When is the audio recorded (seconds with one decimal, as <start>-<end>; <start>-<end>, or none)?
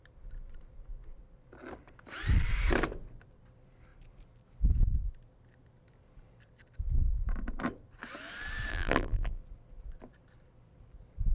0.0-8.7; 9.4-11.3